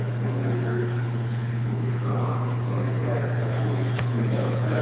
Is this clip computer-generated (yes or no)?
yes